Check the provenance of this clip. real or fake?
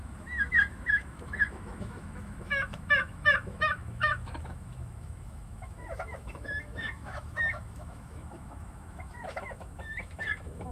fake